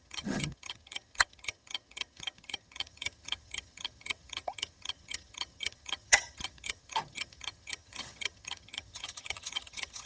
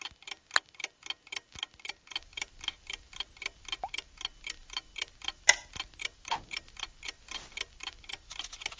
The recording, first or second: second